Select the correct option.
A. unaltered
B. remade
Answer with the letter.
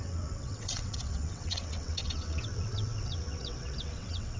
B